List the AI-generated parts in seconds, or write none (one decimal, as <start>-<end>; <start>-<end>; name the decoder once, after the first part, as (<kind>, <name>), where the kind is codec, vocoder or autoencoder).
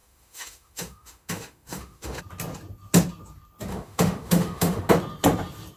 0.0-2.2 (autoencoder, DAC-VAE); 3.7-4.9